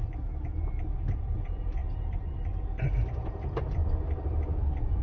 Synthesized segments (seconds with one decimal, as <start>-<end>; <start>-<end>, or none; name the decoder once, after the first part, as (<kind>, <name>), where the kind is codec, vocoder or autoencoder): 0.0-3.8 (vocoder, BigVGAN v2)